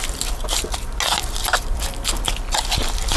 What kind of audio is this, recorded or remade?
recorded